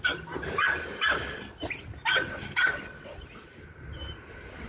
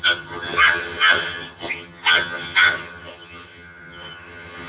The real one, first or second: first